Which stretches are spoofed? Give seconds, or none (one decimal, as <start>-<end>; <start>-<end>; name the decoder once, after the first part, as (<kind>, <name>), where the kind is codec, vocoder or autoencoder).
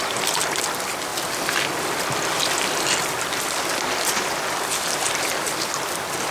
none